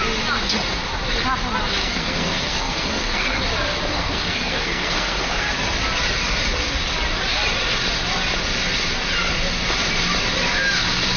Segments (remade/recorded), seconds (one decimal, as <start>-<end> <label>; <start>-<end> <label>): 0.0-1.8 recorded; 1.8-3.4 remade; 3.4-3.9 recorded; 3.9-5.5 remade; 5.5-11.2 recorded